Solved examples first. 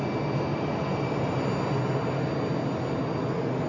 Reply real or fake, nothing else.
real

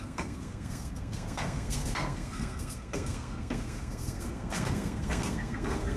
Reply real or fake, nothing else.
fake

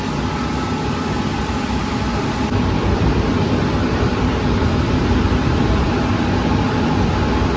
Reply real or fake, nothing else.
fake